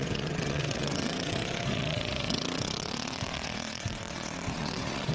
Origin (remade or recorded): remade